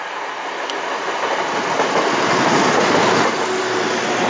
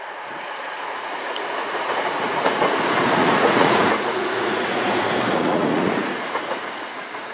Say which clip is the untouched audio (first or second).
first